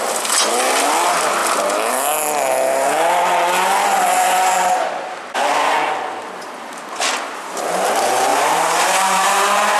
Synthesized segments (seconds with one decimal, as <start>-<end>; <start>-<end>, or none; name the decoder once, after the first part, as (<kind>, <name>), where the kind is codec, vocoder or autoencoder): 8.3-9.8 (vocoder, BigVGAN v2)